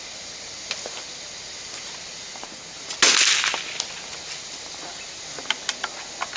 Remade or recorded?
recorded